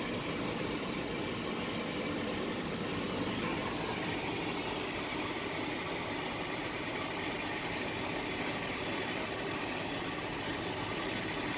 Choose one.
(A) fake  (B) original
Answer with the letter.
B